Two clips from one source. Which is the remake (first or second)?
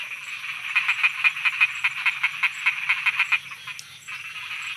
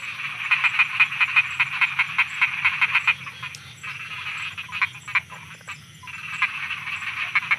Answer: first